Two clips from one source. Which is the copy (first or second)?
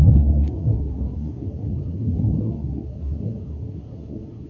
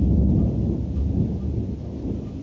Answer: first